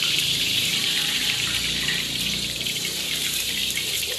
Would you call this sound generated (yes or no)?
yes